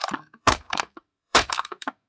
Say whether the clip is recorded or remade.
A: remade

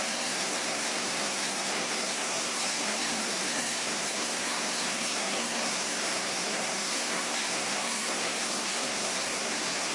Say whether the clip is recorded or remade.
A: remade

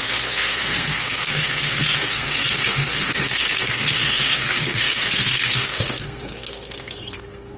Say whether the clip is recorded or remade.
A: remade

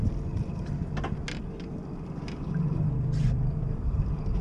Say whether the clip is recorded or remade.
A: recorded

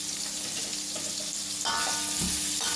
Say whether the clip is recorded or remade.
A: recorded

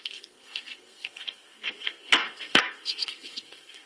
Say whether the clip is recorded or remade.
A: remade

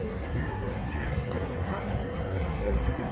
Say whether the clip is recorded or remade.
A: remade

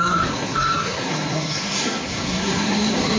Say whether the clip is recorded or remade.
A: remade